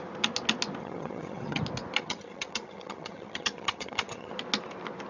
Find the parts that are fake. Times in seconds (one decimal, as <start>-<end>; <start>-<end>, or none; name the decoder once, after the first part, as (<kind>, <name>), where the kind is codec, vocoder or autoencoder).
0.8-1.6 (vocoder, HiFi-GAN); 2.0-4.3